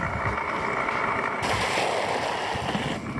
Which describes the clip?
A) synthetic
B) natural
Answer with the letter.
B